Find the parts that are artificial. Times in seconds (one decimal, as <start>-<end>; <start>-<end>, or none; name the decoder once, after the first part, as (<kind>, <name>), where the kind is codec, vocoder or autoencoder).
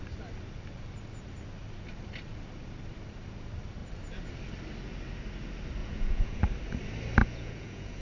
5.8-6.4 (vocoder, Vocos); 7.2-8.0